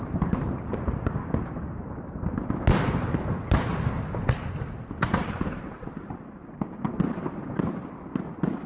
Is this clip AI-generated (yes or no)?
no